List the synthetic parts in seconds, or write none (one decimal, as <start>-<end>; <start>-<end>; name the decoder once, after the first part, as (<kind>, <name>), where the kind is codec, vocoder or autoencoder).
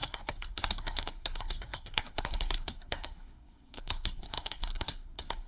0.0-5.5 (codec, SNAC)